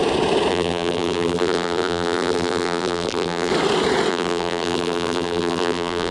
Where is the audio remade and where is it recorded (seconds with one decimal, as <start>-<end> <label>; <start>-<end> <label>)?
0.0-0.5 recorded; 0.5-3.5 remade; 3.5-4.1 recorded; 4.1-6.1 remade